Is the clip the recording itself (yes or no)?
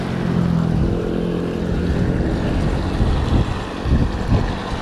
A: yes